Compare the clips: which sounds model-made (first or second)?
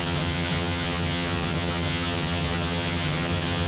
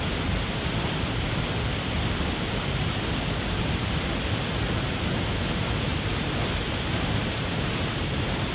first